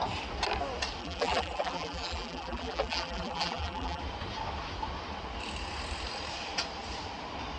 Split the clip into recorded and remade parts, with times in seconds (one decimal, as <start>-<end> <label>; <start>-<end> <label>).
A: 0.0-1.0 recorded; 1.0-4.0 remade; 4.0-7.6 recorded